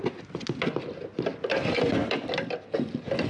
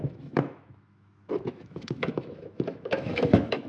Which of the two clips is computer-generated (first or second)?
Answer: second